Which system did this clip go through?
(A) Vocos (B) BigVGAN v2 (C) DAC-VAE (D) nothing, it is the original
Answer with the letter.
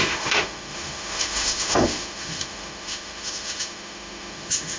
C